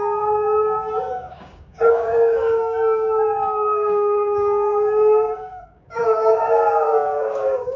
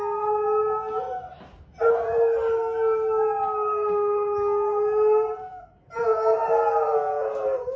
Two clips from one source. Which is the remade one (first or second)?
first